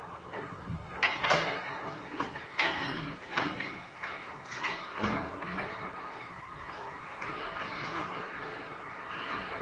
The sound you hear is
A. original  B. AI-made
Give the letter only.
B